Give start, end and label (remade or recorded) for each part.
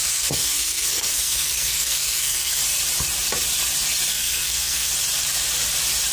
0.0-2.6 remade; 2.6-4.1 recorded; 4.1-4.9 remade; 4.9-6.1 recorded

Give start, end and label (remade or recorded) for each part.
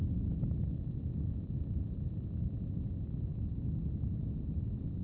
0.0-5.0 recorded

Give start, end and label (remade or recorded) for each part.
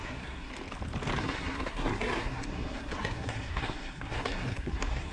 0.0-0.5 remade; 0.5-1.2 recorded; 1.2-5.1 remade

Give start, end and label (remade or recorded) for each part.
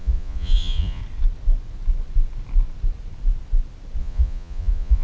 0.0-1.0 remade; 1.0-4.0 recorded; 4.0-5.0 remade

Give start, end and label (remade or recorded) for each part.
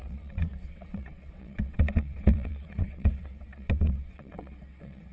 0.0-5.1 remade